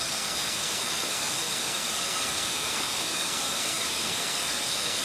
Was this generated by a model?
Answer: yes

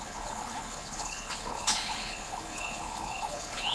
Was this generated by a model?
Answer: yes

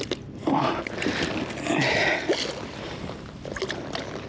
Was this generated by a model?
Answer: no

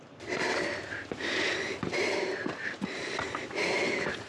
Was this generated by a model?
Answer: no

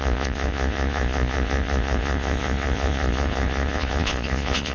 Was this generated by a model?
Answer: yes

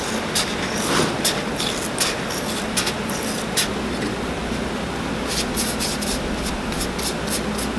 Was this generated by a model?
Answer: no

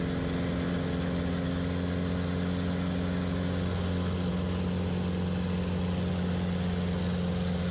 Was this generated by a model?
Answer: no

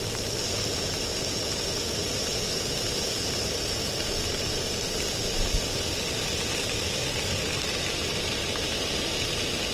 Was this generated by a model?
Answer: no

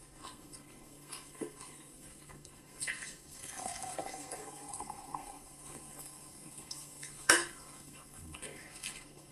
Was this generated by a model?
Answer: yes